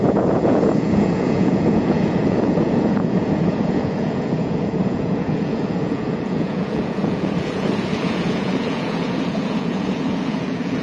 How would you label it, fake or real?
fake